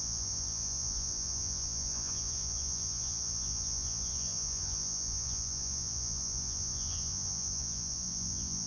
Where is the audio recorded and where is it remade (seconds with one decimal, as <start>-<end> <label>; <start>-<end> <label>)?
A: 0.0-8.7 remade